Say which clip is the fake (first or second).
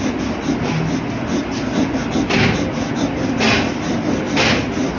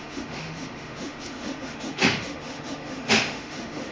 second